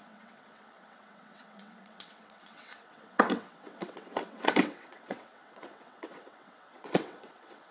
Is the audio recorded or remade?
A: remade